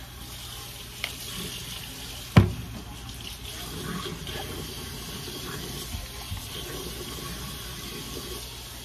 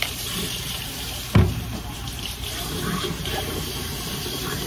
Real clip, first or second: first